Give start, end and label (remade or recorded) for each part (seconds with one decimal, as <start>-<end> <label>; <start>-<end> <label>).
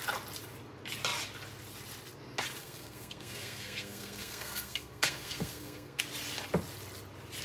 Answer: 0.0-2.6 recorded; 2.6-6.0 remade; 6.0-7.4 recorded